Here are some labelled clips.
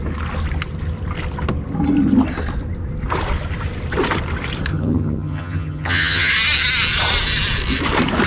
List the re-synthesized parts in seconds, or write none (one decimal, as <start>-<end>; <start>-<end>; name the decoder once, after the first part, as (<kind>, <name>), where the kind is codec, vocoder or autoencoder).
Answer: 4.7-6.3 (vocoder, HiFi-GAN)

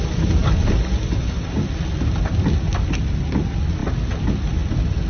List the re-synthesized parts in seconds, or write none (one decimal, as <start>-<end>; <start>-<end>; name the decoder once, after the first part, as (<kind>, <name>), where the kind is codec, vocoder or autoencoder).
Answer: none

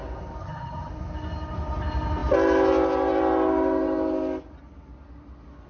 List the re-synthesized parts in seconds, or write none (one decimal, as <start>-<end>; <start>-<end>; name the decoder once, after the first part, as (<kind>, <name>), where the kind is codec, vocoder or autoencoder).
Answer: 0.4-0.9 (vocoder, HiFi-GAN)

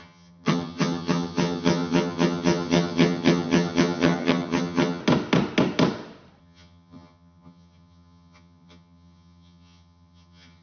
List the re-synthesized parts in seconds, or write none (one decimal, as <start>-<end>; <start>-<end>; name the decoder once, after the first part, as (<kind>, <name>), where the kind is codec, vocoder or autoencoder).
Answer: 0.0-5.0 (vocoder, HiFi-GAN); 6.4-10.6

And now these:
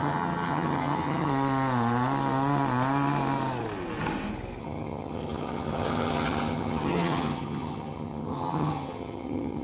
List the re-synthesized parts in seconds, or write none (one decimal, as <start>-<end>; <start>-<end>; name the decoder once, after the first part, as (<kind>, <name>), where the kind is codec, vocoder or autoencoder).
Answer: 0.0-1.3 (vocoder, HiFi-GAN); 4.6-9.6

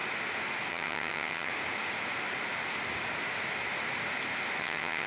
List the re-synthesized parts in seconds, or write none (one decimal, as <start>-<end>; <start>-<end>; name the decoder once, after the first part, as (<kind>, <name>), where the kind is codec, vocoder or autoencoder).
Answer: 0.7-1.5 (vocoder, HiFi-GAN); 4.6-5.1